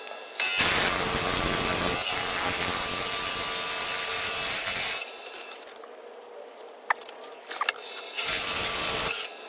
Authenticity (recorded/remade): recorded